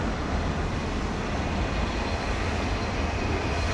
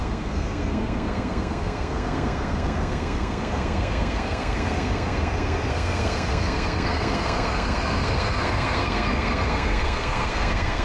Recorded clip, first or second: first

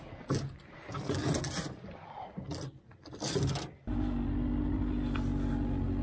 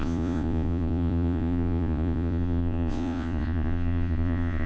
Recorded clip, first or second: first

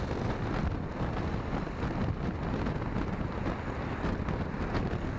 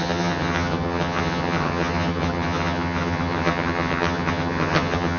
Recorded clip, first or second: first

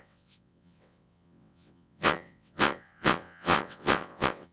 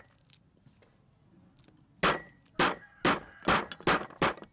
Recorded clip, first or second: second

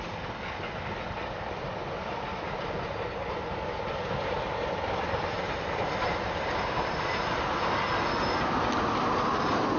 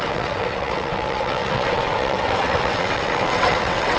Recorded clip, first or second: first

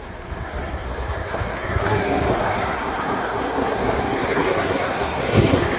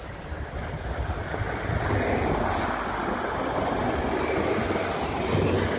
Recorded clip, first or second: second